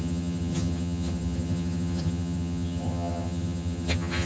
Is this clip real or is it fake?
fake